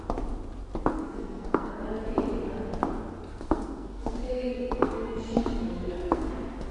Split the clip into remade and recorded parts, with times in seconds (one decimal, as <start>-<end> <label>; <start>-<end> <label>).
0.0-0.9 recorded; 0.9-1.8 remade; 1.8-3.3 recorded; 3.3-6.3 remade; 6.3-6.7 recorded